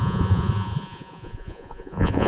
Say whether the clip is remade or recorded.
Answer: remade